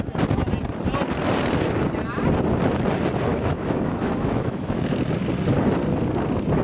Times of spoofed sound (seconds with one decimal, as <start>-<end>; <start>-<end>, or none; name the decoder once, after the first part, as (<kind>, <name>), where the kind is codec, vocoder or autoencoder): 3.3-4.8 (autoencoder, DAC-VAE)